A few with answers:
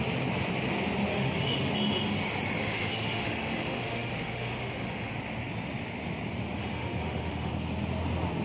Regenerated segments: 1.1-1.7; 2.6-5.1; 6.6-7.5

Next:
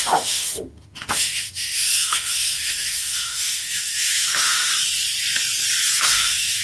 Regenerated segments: 0.0-4.7; 6.0-6.6

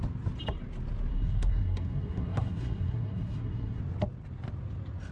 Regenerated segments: 1.1-3.8